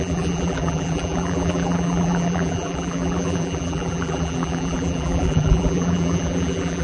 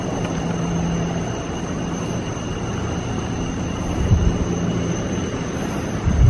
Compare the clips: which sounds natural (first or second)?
second